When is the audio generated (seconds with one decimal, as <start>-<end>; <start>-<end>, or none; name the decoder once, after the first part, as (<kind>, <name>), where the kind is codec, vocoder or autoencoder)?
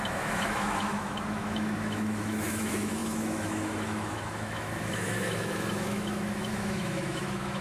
0.0-7.6 (autoencoder, DAC-VAE)